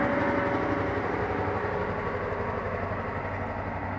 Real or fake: real